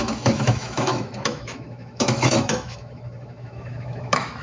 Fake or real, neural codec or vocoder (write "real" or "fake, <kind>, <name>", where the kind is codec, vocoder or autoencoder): fake, autoencoder, DAC-VAE